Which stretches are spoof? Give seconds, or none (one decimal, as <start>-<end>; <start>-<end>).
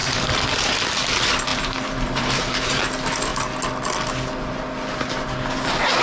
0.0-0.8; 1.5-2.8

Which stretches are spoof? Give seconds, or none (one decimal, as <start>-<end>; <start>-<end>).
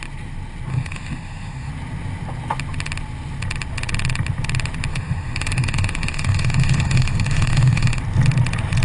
0.7-1.7; 4.9-8.0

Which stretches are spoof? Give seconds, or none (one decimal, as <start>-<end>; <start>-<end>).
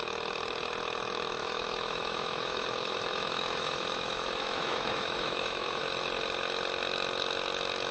1.4-5.8